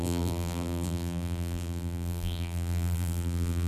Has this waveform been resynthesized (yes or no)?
yes